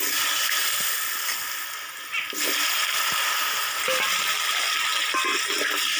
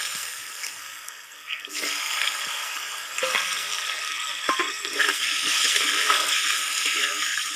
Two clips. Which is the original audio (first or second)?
first